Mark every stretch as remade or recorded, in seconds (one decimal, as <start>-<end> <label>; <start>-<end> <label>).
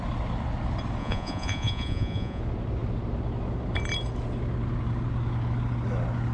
0.0-1.0 recorded; 1.0-2.4 remade; 2.4-6.3 recorded